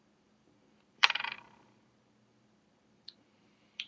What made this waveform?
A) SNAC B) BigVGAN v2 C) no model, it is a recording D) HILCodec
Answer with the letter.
B